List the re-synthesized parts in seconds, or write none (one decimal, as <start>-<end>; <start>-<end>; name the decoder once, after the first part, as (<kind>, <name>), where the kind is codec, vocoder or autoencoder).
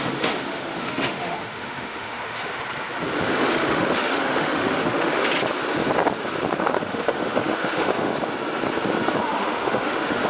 0.0-2.5 (autoencoder, DAC-VAE); 3.5-5.2; 6.5-8.1; 9.2-10.3